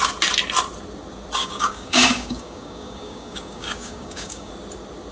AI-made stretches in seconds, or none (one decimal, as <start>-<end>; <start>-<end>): 1.4-4.5